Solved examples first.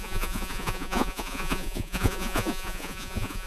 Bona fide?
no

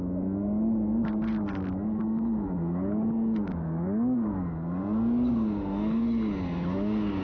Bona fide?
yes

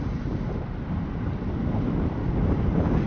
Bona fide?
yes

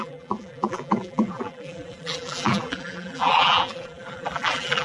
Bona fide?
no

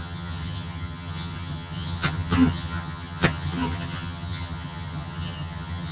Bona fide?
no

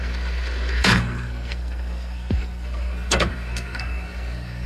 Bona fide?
no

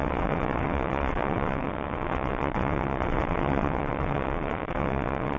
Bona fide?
no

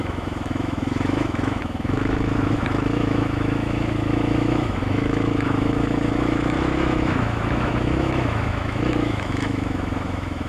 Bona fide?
no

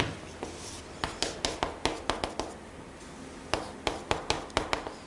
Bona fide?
yes